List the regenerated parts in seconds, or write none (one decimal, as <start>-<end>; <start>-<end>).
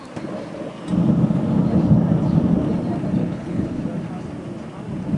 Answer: 3.2-3.8